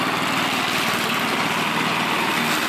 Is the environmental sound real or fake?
real